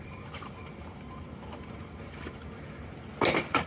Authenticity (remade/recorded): remade